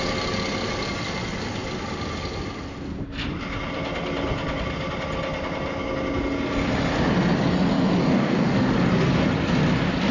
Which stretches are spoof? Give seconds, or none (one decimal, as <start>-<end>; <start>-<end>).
8.0-8.7